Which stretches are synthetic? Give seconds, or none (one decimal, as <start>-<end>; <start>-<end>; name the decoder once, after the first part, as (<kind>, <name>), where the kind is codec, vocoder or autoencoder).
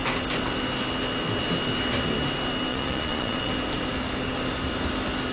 2.7-3.5 (vocoder, Vocos)